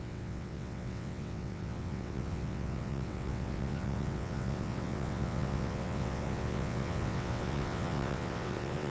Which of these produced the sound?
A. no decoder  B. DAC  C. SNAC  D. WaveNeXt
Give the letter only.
D